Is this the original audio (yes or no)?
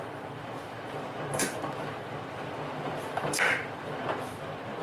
no